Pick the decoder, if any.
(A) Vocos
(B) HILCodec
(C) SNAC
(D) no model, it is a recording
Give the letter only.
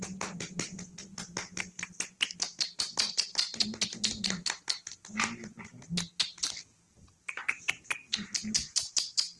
D